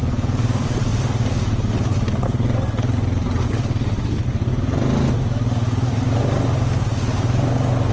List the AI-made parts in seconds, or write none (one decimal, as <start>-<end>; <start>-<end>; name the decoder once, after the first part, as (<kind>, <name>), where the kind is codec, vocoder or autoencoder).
none